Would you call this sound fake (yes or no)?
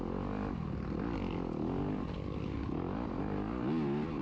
no